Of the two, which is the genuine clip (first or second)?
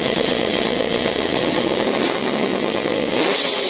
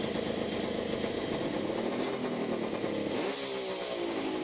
second